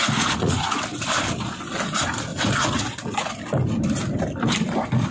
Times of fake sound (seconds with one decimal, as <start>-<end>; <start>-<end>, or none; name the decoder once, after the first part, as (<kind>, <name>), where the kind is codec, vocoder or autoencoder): 0.0-0.8 (vocoder, Vocos); 2.3-3.3